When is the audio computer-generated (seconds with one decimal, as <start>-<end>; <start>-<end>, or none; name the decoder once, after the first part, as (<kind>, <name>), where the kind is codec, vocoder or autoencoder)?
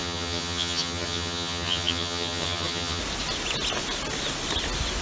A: 0.0-3.0 (vocoder, HiFi-GAN)